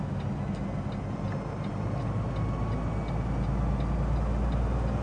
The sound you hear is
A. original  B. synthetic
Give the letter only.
A